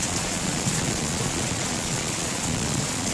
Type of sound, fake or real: fake